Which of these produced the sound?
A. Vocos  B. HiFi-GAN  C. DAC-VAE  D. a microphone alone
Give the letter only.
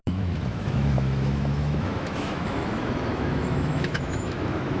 C